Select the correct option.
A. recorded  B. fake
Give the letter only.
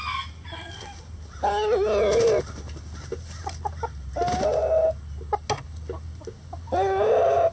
A